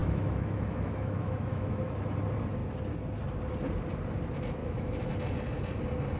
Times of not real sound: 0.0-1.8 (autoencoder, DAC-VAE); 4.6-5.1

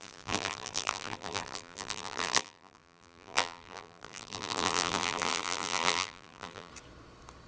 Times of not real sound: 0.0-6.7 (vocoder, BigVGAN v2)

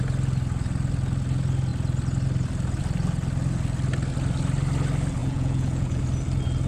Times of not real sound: 5.2-6.0 (vocoder, Vocos)

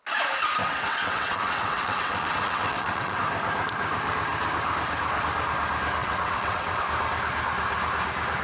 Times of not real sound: 0.6-3.2 (vocoder, WaveNeXt); 6.0-6.8

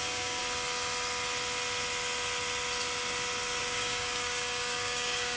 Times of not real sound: 0.0-0.4 (codec, DAC); 3.6-5.4

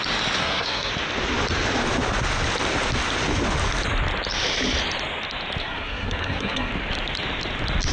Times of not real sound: 0.4-0.9 (codec, SNAC); 5.6-6.7

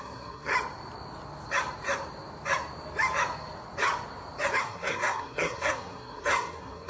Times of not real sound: 0.0-0.5 (codec, SNAC); 4.6-6.9

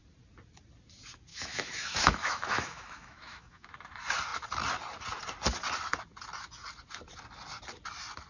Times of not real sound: 1.3-3.7 (autoencoder, DAC-VAE)